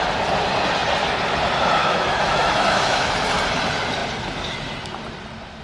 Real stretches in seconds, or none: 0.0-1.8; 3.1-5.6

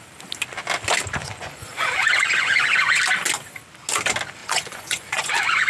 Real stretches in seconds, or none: 0.0-1.2; 3.0-4.4; 5.3-5.7

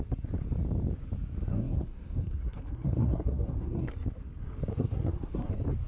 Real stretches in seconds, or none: 0.0-1.5; 3.9-4.7; 5.5-5.9

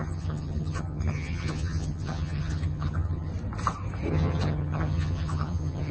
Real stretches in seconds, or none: 3.3-4.1

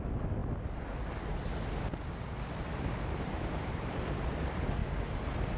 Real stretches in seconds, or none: 0.4-3.8; 4.8-5.6

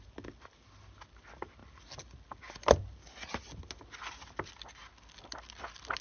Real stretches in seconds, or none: 0.0-6.0

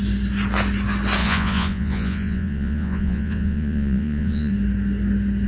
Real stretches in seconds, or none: 0.0-1.2; 4.5-5.5

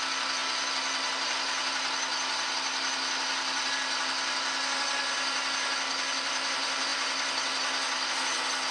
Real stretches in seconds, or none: 0.0-8.7